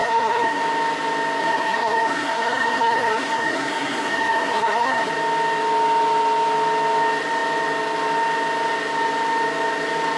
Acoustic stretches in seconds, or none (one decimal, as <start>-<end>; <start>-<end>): 0.6-1.4; 5.1-10.2